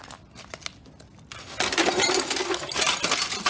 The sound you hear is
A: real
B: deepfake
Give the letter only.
A